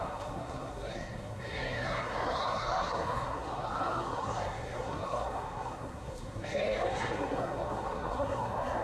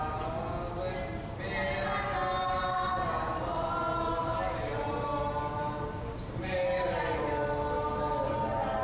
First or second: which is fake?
first